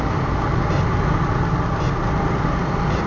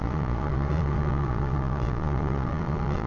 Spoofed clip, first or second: second